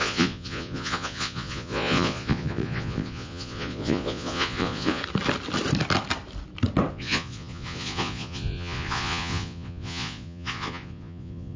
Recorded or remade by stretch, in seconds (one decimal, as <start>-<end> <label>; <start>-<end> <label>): 0.0-5.0 remade; 5.0-6.9 recorded; 6.9-11.6 remade